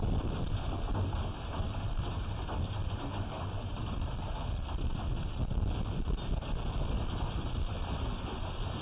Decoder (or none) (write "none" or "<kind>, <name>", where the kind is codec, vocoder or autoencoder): none